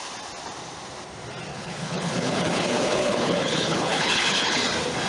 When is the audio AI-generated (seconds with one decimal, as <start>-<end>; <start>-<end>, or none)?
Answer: 1.5-4.6